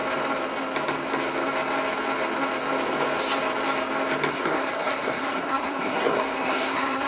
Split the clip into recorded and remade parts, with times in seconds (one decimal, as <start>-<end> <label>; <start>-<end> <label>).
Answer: 0.0-4.3 recorded; 4.3-7.1 remade